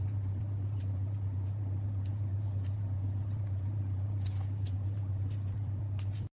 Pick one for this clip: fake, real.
real